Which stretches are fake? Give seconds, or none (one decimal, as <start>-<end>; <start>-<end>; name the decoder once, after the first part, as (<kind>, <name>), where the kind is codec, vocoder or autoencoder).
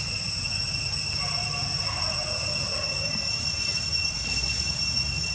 none